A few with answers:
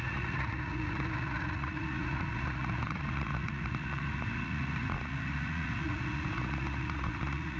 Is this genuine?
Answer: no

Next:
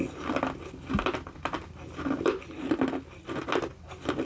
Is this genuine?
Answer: yes